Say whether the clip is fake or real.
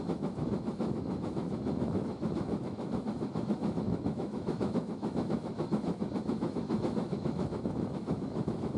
fake